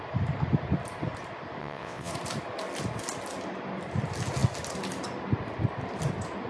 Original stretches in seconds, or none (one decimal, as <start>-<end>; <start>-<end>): 0.0-1.6; 2.1-6.5